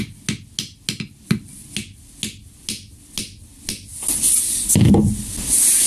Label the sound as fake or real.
real